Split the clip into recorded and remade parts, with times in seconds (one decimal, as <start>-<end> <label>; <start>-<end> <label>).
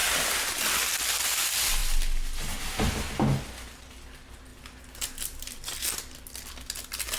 0.0-0.6 remade; 0.6-7.2 recorded